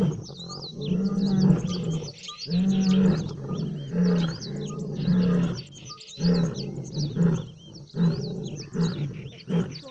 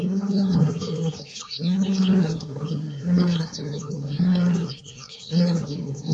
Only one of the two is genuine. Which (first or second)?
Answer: first